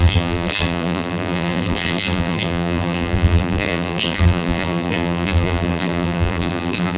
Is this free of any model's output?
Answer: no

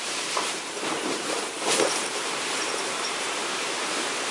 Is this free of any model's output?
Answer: no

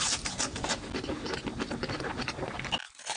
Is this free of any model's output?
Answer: yes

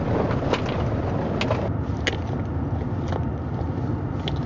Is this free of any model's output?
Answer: yes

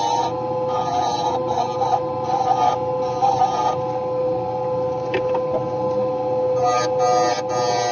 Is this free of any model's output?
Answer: yes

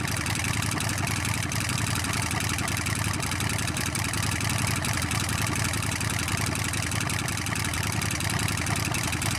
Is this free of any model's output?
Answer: no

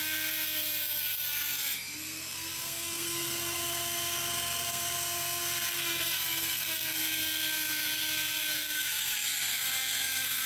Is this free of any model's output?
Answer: no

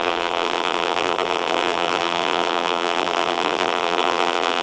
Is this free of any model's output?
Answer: no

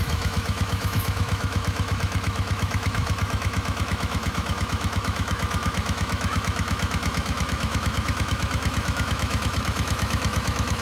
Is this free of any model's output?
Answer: no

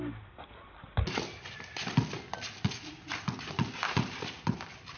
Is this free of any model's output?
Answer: yes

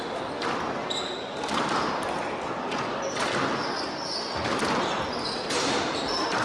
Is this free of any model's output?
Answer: yes